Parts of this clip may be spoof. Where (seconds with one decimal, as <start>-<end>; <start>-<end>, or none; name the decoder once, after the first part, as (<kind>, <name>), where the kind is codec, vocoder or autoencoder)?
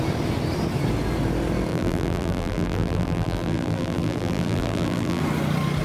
1.7-5.2 (vocoder, BigVGAN v2)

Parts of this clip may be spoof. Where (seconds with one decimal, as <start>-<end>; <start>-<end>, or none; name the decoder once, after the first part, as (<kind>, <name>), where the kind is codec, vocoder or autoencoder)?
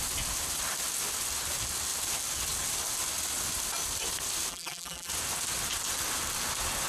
4.5-5.1 (vocoder, BigVGAN v2)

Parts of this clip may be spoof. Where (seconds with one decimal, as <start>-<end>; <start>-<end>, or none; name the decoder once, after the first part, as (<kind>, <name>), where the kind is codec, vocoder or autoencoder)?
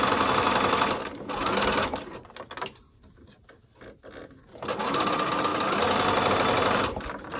none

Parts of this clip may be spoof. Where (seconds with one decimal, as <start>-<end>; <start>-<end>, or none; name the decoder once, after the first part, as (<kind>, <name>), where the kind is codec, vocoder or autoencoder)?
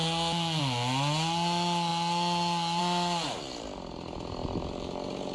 none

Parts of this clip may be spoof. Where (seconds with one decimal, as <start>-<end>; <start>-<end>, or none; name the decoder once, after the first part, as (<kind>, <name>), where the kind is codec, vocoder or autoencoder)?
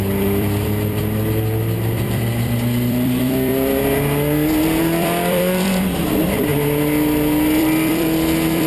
0.0-3.5 (vocoder, BigVGAN v2); 4.8-6.5; 7.6-8.7